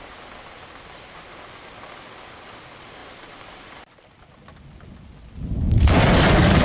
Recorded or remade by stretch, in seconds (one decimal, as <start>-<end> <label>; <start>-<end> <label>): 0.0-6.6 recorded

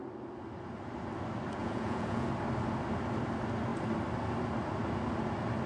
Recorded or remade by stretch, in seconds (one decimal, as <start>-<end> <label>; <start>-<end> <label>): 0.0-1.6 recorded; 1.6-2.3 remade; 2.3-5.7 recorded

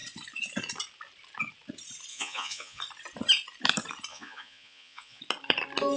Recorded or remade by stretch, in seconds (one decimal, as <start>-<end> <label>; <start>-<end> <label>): 0.0-2.1 recorded; 2.1-2.8 remade; 2.8-4.1 recorded; 4.1-5.2 remade; 5.2-6.0 recorded